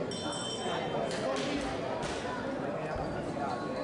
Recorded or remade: recorded